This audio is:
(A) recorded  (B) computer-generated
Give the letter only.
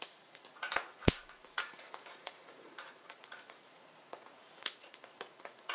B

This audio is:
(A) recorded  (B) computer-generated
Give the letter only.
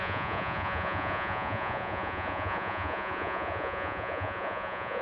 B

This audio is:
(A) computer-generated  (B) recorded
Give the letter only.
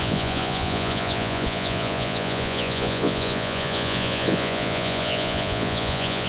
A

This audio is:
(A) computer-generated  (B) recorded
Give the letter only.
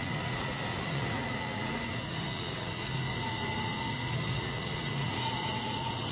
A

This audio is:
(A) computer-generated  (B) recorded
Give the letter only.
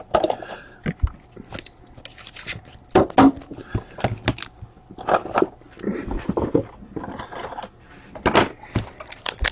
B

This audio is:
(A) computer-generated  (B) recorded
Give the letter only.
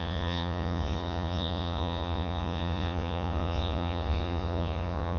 A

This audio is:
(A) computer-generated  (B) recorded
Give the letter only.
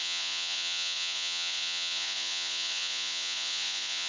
A